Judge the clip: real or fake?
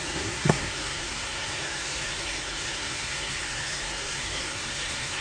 fake